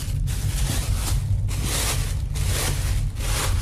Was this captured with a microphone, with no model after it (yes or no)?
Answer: yes